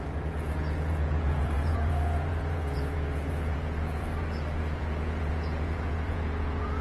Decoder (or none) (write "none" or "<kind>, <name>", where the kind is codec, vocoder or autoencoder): vocoder, Vocos